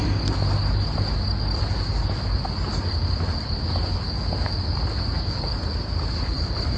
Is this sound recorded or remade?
recorded